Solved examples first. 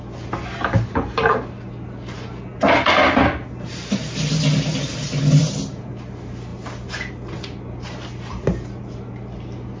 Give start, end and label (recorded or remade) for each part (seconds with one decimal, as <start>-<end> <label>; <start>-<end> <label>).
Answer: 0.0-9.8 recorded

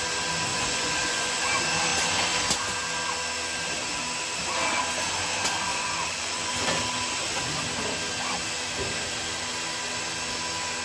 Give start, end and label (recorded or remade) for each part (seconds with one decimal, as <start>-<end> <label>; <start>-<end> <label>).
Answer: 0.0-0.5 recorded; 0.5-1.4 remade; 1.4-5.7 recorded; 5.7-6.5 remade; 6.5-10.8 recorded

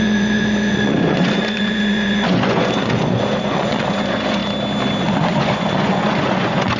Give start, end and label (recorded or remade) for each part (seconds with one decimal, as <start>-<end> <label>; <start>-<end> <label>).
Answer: 0.0-4.4 remade; 4.4-5.0 recorded; 5.0-6.8 remade

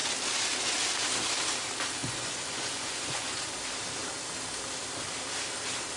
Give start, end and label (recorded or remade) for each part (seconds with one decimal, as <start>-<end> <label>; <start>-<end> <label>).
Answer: 0.0-2.0 recorded; 2.0-3.4 remade; 3.4-6.0 recorded

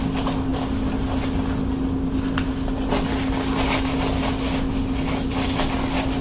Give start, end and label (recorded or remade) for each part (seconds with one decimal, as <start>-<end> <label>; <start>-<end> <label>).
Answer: 0.0-6.2 recorded

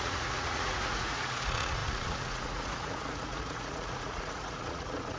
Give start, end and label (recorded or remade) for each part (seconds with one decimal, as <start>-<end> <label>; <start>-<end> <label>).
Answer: 0.0-5.2 remade

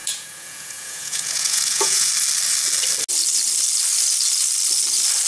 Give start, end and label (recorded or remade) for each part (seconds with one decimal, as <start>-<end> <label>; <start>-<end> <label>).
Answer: 0.0-2.1 remade; 2.1-5.3 recorded

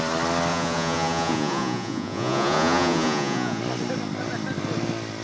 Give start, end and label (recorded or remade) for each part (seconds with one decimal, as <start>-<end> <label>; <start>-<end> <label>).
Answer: 0.0-0.5 recorded; 0.5-3.6 remade; 3.6-5.2 recorded